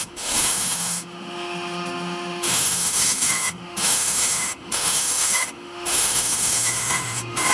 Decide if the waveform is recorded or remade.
remade